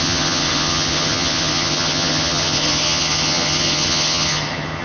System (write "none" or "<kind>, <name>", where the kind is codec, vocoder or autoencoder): vocoder, HiFi-GAN